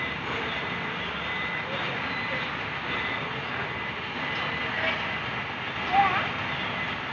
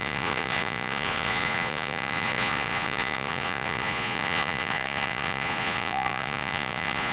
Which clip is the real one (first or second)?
first